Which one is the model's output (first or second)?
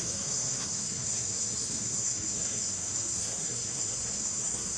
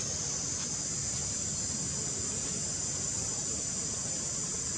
first